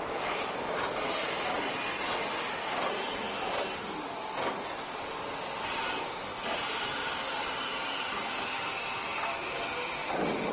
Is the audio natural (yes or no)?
yes